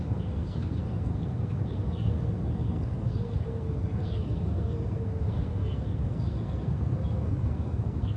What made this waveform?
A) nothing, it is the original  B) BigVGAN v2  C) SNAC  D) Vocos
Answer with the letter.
C